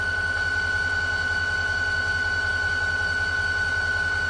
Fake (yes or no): no